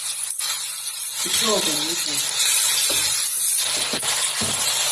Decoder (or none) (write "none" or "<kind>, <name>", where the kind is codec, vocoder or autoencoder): vocoder, BigVGAN v2